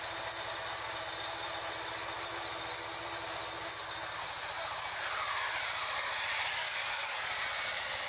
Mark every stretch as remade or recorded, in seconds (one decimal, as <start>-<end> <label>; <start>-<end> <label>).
0.0-6.6 recorded; 6.6-7.2 remade; 7.2-8.1 recorded